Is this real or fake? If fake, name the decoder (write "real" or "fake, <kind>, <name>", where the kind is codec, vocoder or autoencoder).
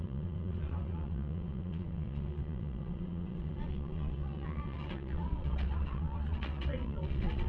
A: fake, vocoder, WaveNeXt